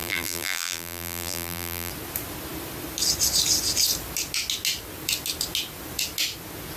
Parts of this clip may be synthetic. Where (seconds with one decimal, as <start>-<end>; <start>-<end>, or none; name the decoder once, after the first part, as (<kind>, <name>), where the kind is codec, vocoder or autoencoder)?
0.0-1.9 (vocoder, BigVGAN v2)